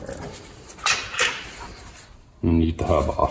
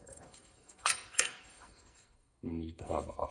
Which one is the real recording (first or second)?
first